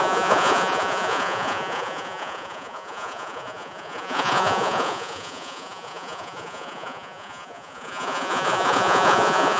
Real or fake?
fake